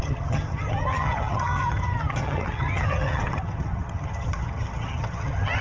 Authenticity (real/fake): fake